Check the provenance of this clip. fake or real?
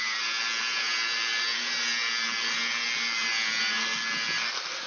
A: real